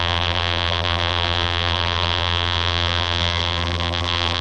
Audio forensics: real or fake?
fake